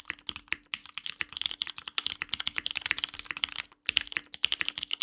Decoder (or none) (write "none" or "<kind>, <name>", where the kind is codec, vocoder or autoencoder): none